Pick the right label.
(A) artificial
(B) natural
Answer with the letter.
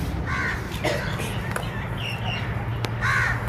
B